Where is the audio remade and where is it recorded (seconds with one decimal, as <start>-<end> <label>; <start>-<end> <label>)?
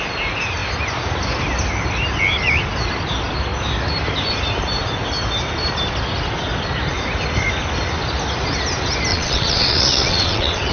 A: 0.0-9.1 recorded; 9.1-10.7 remade